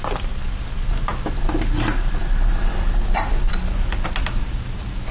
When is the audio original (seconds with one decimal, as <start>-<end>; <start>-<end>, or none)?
0.0-5.1